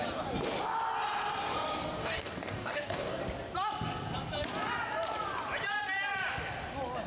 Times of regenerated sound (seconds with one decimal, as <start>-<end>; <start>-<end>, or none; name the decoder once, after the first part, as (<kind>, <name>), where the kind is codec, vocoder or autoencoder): 2.0-3.2 (codec, DAC)